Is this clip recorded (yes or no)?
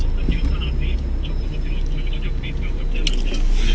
yes